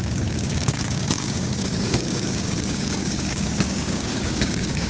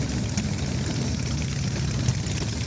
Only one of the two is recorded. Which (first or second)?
second